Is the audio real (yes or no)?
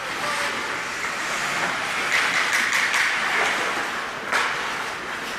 yes